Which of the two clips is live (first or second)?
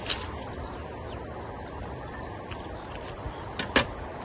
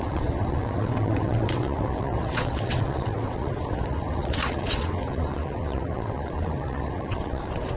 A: first